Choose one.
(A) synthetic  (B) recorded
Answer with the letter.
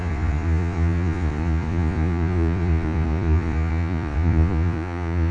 A